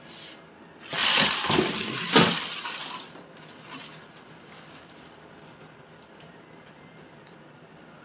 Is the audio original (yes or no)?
yes